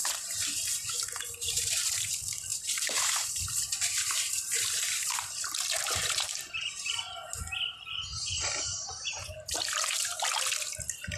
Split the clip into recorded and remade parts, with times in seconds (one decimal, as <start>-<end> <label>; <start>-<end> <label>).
0.0-2.1 remade; 2.1-2.5 recorded; 2.5-7.4 remade; 7.4-8.1 recorded; 8.1-10.2 remade; 10.2-11.2 recorded